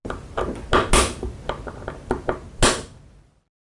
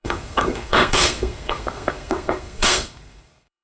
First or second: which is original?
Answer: first